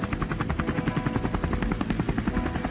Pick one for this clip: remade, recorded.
recorded